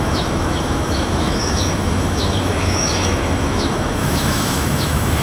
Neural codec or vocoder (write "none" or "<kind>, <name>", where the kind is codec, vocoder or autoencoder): autoencoder, DAC-VAE